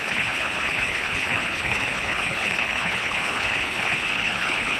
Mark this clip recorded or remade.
remade